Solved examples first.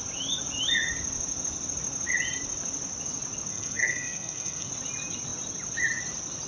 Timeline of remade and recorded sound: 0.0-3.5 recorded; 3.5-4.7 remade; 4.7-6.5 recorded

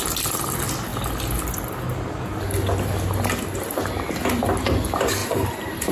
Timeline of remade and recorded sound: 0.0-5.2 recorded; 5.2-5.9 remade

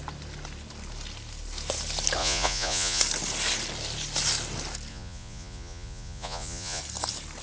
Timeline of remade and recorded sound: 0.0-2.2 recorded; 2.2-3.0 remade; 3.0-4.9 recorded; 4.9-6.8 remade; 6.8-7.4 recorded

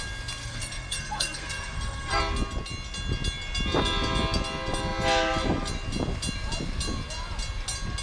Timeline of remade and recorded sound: 0.0-0.4 recorded; 0.4-2.2 remade; 2.2-8.0 recorded